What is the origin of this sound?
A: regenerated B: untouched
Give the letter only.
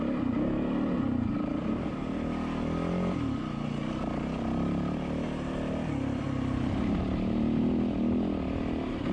B